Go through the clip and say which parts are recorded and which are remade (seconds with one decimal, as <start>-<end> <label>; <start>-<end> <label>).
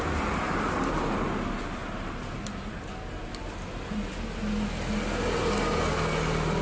0.0-6.6 recorded